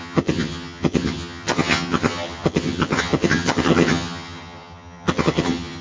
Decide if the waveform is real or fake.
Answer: fake